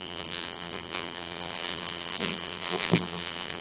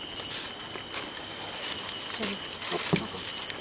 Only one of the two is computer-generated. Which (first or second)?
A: first